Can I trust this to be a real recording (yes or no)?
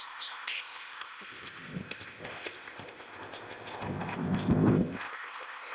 no